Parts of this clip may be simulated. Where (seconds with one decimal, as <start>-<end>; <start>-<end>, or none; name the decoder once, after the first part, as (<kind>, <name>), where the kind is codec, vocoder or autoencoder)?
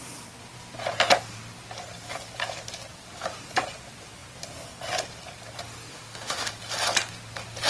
5.9-6.5 (autoencoder, DAC-VAE)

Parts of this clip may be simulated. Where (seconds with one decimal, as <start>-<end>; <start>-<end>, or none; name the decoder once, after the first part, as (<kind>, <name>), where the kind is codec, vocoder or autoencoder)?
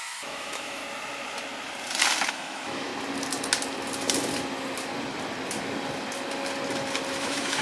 0.0-0.8 (autoencoder, DAC-VAE); 2.3-2.9; 7.1-7.6